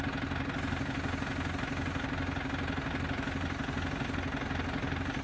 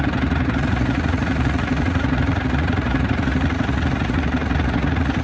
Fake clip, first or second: second